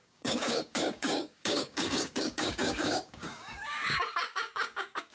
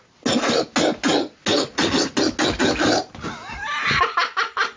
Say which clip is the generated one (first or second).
first